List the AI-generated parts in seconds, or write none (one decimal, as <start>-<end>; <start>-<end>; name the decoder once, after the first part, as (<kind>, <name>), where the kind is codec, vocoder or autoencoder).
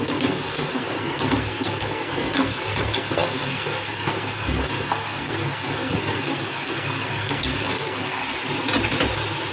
0.0-8.2 (codec, SNAC)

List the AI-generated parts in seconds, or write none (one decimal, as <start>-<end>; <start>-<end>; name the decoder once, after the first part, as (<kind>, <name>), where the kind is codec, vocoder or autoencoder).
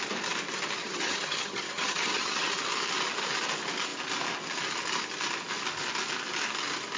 0.8-2.5 (vocoder, HiFi-GAN)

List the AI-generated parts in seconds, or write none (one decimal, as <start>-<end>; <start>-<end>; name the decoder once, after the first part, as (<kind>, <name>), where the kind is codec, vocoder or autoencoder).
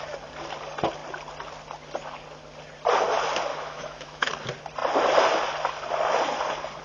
3.5-4.3 (autoencoder, DAC-VAE)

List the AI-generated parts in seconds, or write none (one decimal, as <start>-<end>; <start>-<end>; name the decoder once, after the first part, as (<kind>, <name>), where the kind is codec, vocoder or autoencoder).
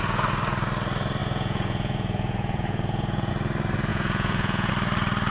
1.2-3.3 (vocoder, Vocos); 3.9-4.7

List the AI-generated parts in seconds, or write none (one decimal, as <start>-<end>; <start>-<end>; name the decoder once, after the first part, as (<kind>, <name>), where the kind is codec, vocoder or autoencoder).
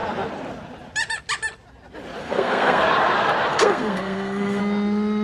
2.2-2.8 (codec, SNAC); 3.5-4.6